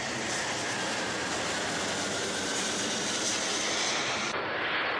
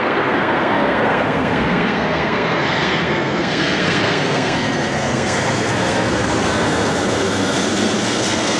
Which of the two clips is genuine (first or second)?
first